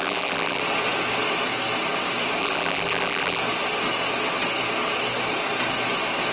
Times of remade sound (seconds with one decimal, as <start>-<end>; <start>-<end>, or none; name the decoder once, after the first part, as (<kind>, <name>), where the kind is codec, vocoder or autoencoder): 0.0-0.6 (vocoder, BigVGAN v2); 2.4-3.4